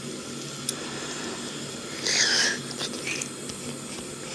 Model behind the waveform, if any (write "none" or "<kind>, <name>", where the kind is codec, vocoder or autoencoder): none